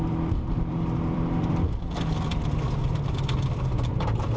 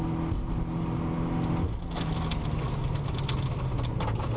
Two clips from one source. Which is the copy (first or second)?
first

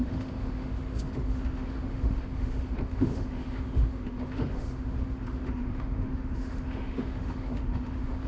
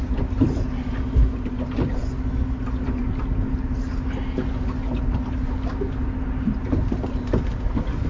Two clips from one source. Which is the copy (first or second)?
first